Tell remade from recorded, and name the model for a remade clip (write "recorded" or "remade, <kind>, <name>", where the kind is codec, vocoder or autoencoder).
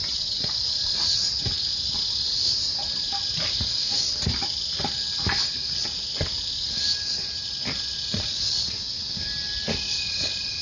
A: recorded